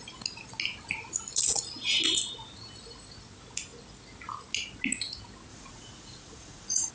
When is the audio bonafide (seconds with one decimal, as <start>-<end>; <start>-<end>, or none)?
0.0-5.5